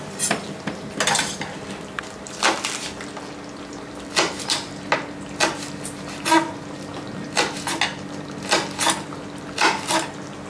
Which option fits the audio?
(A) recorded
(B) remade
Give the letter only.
A